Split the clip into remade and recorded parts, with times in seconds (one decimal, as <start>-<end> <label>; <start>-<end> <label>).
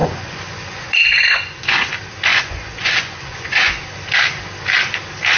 0.0-1.9 remade; 1.9-2.3 recorded; 2.3-3.8 remade; 3.8-5.4 recorded